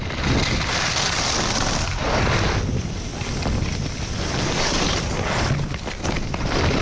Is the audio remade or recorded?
recorded